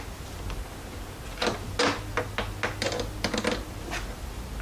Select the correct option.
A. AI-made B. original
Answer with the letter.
B